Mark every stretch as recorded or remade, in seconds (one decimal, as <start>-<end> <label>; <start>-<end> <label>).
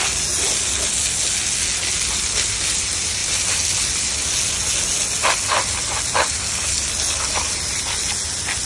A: 0.0-8.7 recorded